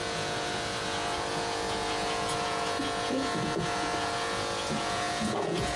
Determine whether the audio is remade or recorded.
remade